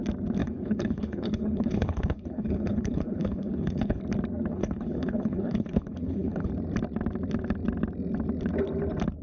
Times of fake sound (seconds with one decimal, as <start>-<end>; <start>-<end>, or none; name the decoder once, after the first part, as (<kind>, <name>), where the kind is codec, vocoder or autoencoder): 0.4-4.0 (codec, HILCodec); 4.5-6.5